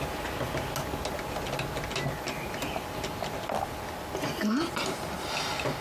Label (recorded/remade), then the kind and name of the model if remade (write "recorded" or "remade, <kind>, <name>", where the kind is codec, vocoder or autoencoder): recorded